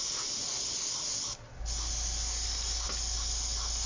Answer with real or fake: real